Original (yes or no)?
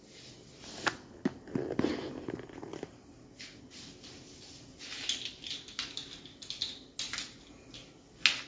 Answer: yes